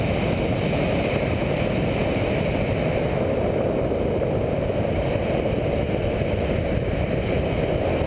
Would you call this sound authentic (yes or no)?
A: yes